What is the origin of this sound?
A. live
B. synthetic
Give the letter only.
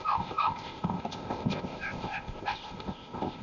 B